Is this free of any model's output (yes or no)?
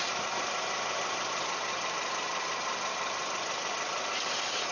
yes